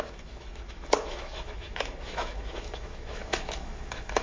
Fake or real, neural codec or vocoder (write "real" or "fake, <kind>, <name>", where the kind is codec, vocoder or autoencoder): fake, autoencoder, DAC-VAE